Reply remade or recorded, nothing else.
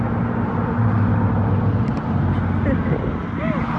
recorded